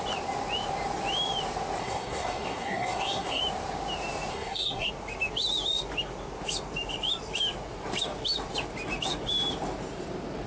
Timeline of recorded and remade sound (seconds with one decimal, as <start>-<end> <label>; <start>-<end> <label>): 0.0-1.8 recorded; 1.8-3.4 remade; 3.4-4.3 recorded; 4.3-4.9 remade; 4.9-10.5 recorded